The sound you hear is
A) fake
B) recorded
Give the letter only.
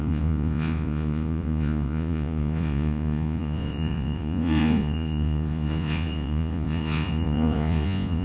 A